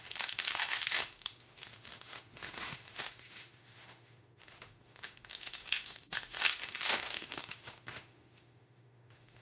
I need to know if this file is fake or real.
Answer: fake